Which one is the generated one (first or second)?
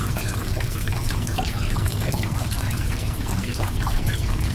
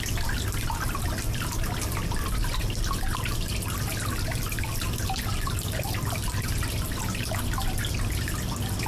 first